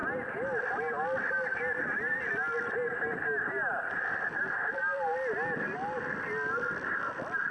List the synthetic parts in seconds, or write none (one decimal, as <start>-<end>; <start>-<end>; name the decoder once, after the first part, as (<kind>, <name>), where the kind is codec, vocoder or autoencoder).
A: none